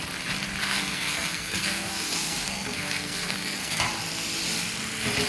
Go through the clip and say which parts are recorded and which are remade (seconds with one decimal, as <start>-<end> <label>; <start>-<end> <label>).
0.0-0.6 recorded; 0.6-3.8 remade; 3.8-5.3 recorded